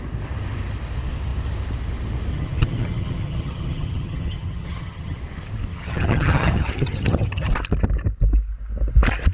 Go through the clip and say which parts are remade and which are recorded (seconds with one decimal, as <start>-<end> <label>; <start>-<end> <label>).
0.0-2.3 recorded; 2.3-5.2 remade; 5.2-5.7 recorded; 5.7-7.5 remade; 7.5-9.3 recorded